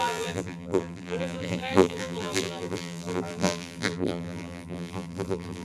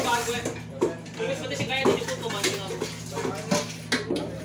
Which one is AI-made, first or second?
first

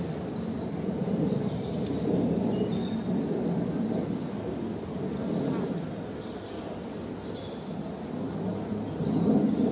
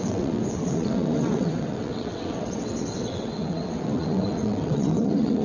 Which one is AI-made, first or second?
second